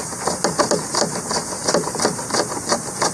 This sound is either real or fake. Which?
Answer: real